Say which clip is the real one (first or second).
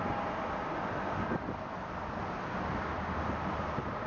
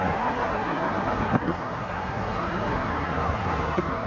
first